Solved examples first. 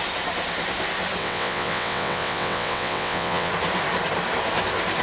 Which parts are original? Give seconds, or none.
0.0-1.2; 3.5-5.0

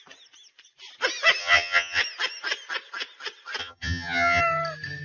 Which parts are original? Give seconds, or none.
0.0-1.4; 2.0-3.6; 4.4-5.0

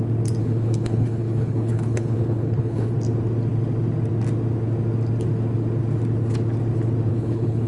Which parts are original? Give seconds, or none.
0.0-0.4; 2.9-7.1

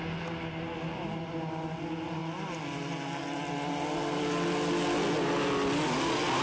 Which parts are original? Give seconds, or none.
0.0-6.4